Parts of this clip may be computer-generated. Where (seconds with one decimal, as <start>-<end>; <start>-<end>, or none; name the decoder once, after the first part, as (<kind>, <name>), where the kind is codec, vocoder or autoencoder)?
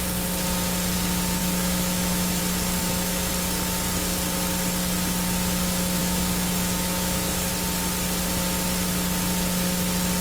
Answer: 1.4-2.4 (autoencoder, DAC-VAE); 2.8-3.3; 6.0-7.5